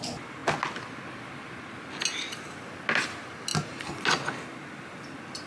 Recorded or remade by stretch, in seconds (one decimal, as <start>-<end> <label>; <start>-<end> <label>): 0.0-5.5 recorded